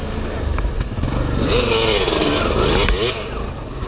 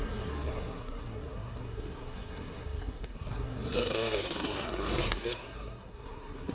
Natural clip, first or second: first